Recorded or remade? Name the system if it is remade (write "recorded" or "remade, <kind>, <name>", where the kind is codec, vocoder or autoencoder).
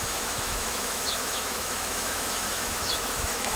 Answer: remade, autoencoder, DAC-VAE